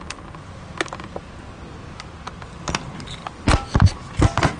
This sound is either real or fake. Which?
real